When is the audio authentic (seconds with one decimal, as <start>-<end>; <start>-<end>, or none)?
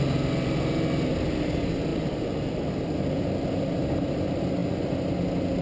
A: 0.0-5.6